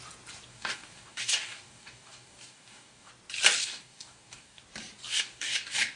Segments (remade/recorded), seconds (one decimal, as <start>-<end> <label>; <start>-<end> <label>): 0.0-0.5 recorded; 0.5-3.1 remade; 3.1-3.6 recorded; 3.6-4.6 remade; 4.6-5.1 recorded; 5.1-6.0 remade